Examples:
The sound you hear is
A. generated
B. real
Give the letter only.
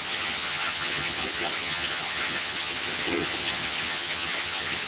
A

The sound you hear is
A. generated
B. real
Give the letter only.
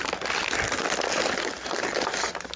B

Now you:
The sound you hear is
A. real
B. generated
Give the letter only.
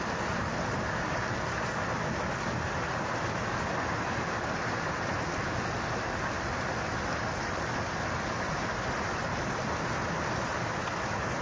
A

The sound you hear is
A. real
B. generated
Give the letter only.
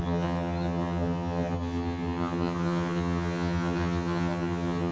B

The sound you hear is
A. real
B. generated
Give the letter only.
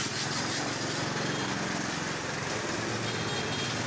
A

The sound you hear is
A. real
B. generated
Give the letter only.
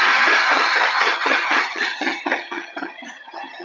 B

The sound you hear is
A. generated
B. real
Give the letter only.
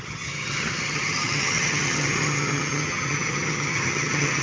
A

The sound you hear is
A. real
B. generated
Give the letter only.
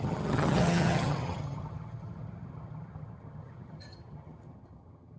B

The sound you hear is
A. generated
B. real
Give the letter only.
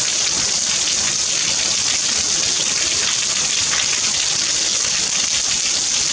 B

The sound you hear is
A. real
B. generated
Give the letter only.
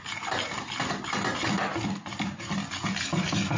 A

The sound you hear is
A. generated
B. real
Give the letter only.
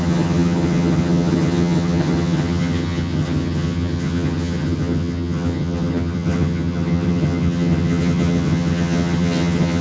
A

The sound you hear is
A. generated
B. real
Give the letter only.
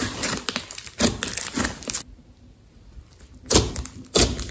B